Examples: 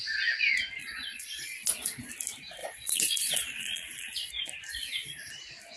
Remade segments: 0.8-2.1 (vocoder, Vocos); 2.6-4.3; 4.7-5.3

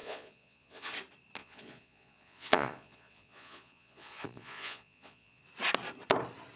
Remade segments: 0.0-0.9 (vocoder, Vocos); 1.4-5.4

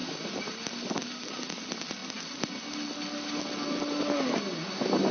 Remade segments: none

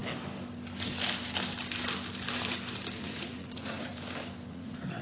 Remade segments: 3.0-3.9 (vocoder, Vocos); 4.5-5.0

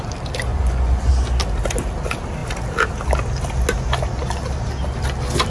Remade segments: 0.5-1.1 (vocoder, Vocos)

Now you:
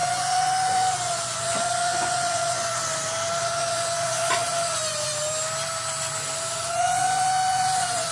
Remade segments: 0.0-2.8 (vocoder, Vocos); 3.4-5.1; 6.5-8.1